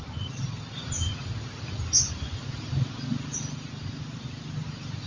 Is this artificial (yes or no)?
no